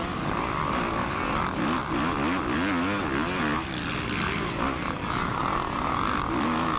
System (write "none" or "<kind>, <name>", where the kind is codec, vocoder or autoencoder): none